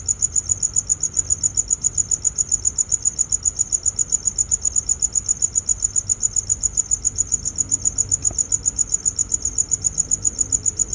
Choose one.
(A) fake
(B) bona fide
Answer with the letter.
B